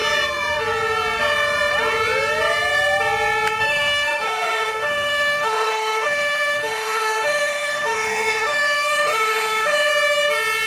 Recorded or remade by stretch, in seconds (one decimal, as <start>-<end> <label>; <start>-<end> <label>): 0.0-3.6 recorded; 3.6-9.9 remade; 9.9-10.7 recorded